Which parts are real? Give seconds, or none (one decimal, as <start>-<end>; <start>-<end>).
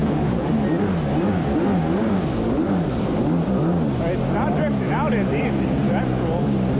0.5-6.8